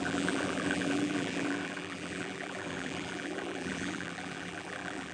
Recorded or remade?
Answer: remade